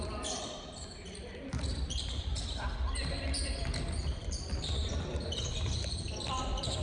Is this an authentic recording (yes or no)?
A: no